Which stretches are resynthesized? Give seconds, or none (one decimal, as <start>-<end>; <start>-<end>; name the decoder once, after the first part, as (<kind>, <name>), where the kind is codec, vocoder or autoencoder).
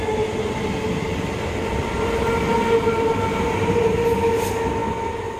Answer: none